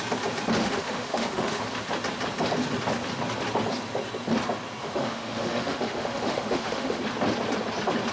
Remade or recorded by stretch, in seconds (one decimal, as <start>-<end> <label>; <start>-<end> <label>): 0.0-0.6 recorded; 0.6-1.6 remade; 1.6-4.8 recorded; 4.8-7.0 remade; 7.0-8.1 recorded